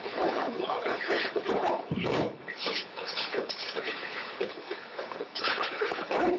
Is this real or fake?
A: fake